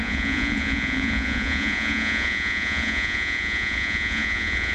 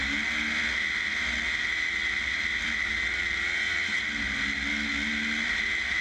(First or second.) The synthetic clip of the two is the first